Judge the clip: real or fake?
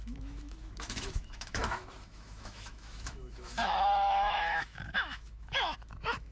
fake